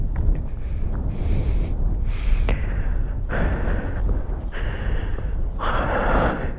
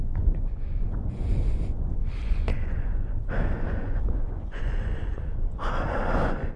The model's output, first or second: second